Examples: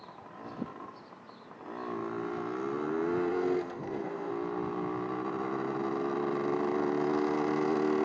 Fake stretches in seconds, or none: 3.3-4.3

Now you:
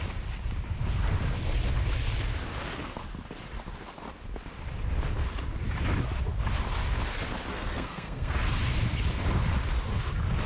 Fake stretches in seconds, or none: 7.5-8.3

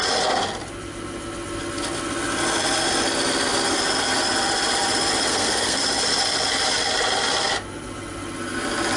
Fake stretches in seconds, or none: 5.3-5.8

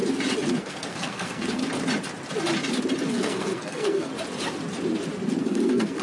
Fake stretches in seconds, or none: 0.5-1.6; 3.1-4.1; 5.4-6.0

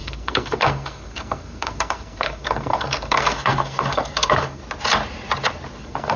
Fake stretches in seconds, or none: 0.0-4.6; 5.8-6.2

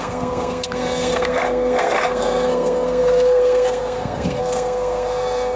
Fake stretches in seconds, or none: 0.0-5.6

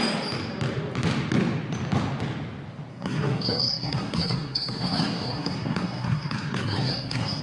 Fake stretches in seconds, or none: 2.9-7.4